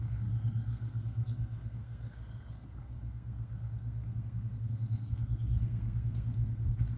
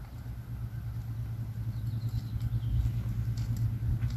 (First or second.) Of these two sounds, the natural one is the second